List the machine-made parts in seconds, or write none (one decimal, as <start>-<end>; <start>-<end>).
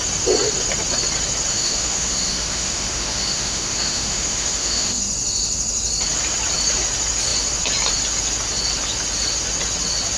1.5-5.0